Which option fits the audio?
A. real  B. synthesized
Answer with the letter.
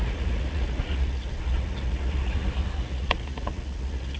B